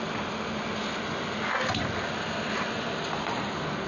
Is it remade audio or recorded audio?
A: recorded